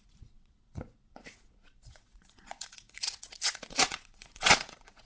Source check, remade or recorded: remade